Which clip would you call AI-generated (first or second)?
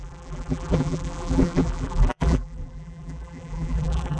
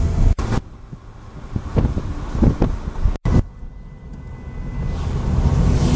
first